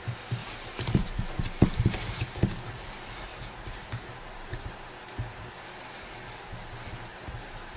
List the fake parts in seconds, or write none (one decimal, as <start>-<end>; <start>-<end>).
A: 0.4-1.4; 3.3-4.9; 7.1-7.8